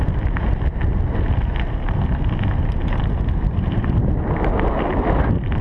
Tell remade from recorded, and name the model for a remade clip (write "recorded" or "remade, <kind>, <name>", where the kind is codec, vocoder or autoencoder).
recorded